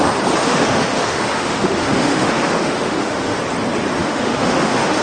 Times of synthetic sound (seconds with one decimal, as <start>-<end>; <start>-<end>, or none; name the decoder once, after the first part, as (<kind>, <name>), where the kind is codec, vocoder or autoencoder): 0.4-3.4 (autoencoder, DAC-VAE); 4.0-5.0